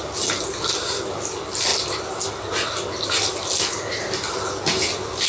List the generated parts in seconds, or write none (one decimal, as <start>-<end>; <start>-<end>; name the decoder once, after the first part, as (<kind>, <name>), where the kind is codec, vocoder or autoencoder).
none